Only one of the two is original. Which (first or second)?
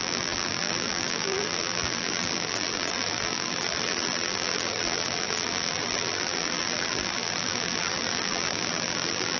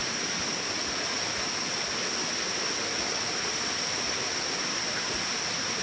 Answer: second